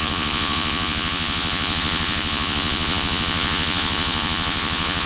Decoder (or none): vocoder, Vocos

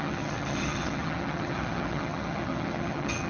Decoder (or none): vocoder, HiFi-GAN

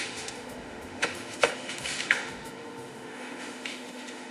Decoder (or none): autoencoder, DAC-VAE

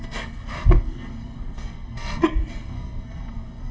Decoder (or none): codec, SNAC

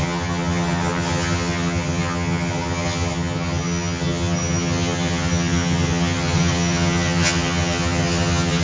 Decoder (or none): vocoder, HiFi-GAN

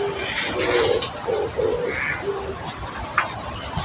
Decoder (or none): none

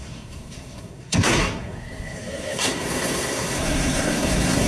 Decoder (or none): codec, SNAC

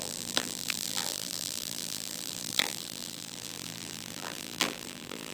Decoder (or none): vocoder, BigVGAN v2